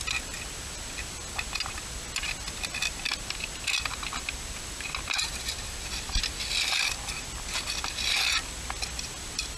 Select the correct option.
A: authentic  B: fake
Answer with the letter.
A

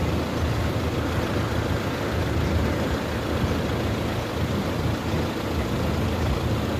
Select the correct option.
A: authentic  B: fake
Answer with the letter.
A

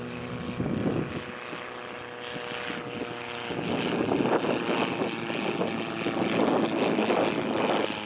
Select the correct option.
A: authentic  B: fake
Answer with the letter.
A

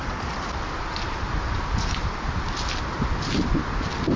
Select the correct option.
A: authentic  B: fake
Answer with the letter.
A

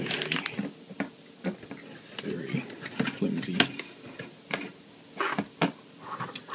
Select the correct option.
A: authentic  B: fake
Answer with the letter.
A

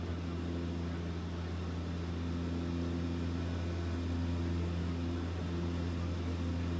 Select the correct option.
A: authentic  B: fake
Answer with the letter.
A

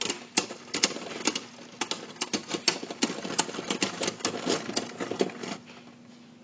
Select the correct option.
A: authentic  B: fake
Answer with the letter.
A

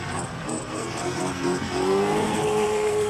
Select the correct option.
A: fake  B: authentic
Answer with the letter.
A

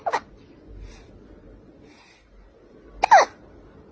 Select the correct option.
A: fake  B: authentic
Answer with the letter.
B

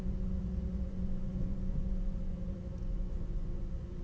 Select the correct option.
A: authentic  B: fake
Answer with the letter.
B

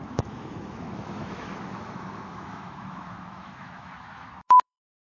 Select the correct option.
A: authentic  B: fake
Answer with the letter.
B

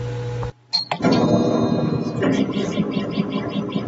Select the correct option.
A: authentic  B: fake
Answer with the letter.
A